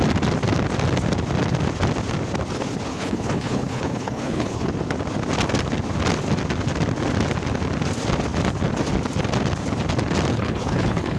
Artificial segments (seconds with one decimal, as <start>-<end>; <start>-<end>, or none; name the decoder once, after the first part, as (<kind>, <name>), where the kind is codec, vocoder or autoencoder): 2.9-4.7 (codec, HILCodec); 10.3-11.2